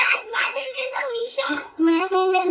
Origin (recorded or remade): remade